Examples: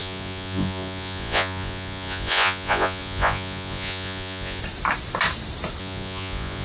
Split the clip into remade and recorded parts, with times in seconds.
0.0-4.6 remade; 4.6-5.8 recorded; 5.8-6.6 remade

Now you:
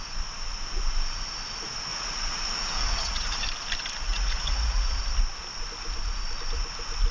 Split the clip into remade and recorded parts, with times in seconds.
0.0-1.9 recorded; 1.9-3.4 remade; 3.4-4.1 recorded; 4.1-5.0 remade; 5.0-7.1 recorded